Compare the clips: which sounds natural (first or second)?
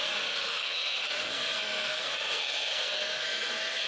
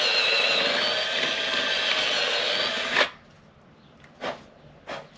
second